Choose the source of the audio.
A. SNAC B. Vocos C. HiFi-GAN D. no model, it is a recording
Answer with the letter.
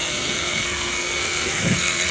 A